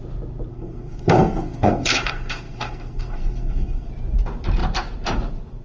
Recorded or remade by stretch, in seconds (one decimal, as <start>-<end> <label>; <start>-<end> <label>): 0.0-0.5 recorded; 0.5-3.9 remade; 3.9-5.6 recorded